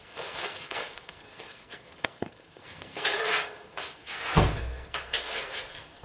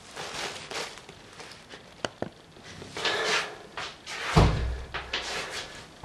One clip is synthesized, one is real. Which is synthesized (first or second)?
first